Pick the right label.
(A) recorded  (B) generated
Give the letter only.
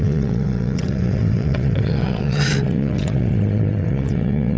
B